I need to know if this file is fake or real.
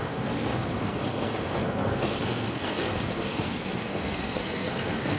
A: fake